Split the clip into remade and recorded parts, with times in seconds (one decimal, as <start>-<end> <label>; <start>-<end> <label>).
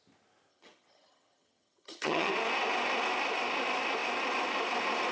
0.0-0.5 recorded; 0.5-2.3 remade; 2.3-5.1 recorded